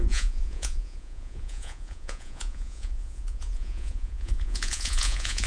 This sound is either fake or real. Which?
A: fake